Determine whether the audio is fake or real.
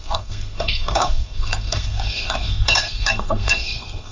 fake